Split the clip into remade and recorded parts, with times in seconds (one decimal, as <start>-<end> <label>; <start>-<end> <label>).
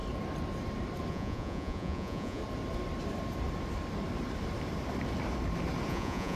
0.0-1.1 recorded; 1.1-2.4 remade; 2.4-5.9 recorded; 5.9-6.4 remade